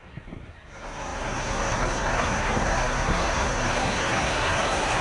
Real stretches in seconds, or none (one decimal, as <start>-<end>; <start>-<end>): none

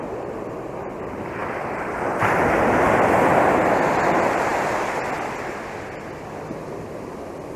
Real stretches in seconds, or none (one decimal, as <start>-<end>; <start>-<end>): 0.0-7.6

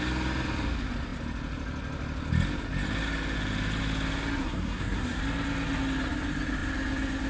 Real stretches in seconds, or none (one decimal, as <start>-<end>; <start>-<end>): 0.0-4.4; 5.2-7.3

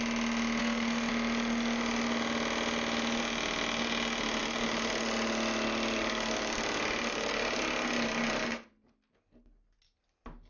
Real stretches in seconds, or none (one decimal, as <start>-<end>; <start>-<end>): 0.0-0.6; 1.1-10.5

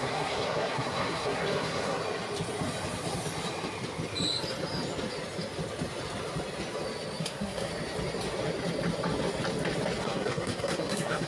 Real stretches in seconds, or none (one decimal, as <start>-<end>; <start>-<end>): 2.0-7.2; 7.7-10.0

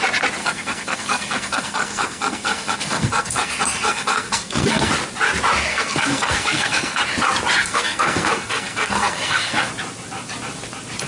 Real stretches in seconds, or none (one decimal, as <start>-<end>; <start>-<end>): 0.0-0.4; 4.9-5.7; 7.0-7.6; 9.7-11.1

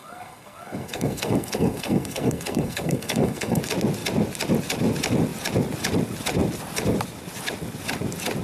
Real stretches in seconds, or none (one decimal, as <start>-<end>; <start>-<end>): 3.6-8.4

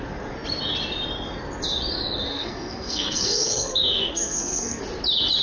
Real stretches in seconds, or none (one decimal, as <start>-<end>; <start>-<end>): 0.0-2.3; 4.8-5.4